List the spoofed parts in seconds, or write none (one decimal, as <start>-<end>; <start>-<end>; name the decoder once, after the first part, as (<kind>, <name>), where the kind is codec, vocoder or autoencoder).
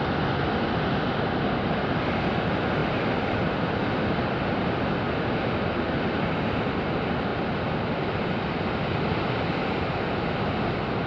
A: none